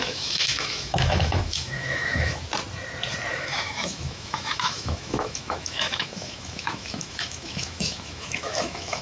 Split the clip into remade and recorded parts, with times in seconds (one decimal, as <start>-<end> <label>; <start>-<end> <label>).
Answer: 0.0-2.5 remade; 2.5-3.3 recorded; 3.3-9.0 remade